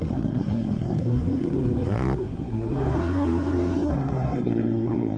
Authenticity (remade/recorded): remade